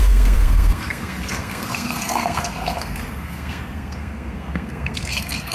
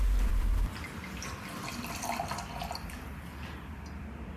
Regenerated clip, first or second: first